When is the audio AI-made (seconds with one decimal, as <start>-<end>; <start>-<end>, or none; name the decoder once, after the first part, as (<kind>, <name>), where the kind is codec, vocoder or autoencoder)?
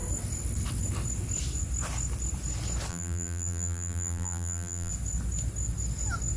2.9-4.9 (vocoder, BigVGAN v2)